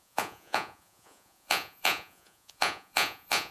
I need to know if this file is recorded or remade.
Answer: remade